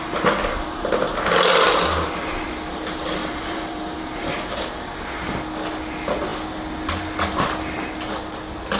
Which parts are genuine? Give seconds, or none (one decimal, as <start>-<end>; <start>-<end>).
0.0-3.2; 4.9-8.8